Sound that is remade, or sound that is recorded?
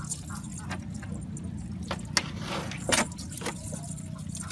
recorded